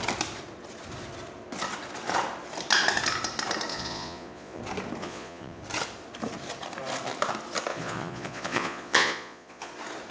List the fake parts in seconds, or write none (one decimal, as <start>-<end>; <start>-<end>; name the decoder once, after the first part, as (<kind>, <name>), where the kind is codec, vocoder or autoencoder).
3.7-4.6 (vocoder, Vocos); 5.0-5.6; 7.7-9.7